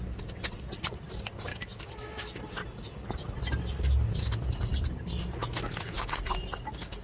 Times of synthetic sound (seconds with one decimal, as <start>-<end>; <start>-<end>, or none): 1.5-2.4; 5.4-6.1